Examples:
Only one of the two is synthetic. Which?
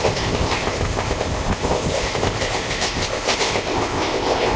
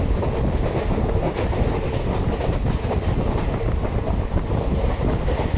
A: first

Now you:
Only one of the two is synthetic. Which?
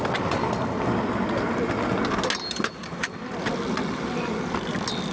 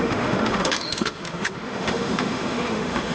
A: second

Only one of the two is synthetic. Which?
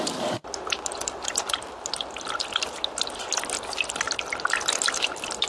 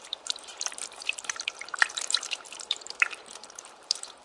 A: second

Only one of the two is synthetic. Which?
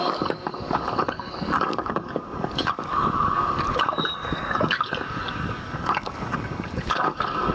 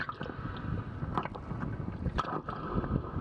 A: first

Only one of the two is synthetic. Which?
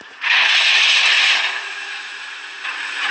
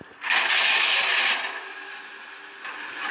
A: first